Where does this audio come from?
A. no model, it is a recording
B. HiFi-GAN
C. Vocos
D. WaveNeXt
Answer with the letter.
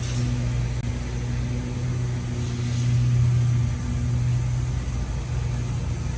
A